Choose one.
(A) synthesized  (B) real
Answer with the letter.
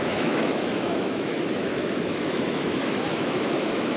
A